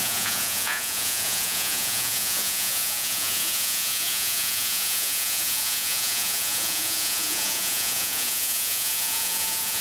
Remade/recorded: remade